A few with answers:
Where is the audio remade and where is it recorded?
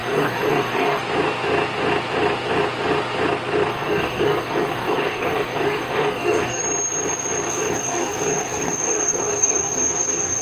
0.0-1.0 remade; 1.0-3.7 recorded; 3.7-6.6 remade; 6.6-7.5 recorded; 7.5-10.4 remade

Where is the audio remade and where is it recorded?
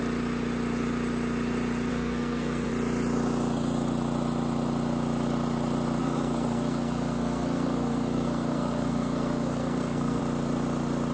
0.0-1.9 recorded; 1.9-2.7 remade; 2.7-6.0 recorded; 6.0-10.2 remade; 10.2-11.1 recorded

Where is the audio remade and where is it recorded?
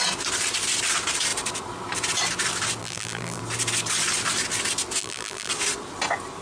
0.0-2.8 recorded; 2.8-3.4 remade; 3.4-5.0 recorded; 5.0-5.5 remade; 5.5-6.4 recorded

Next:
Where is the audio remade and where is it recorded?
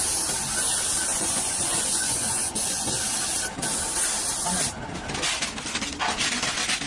0.0-1.1 recorded; 1.1-3.0 remade; 3.0-6.9 recorded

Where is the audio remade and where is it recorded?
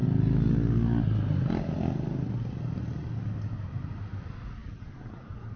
0.0-5.6 recorded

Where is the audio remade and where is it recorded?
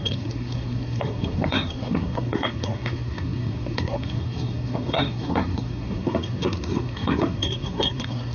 0.0-8.3 remade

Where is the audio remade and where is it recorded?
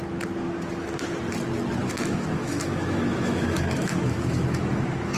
0.0-1.8 recorded; 1.8-5.2 remade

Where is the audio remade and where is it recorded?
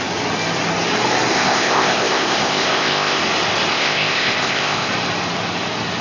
0.0-1.3 recorded; 1.3-3.2 remade; 3.2-3.7 recorded; 3.7-4.9 remade; 4.9-6.0 recorded